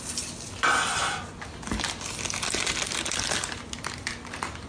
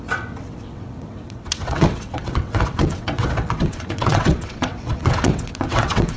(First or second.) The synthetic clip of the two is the second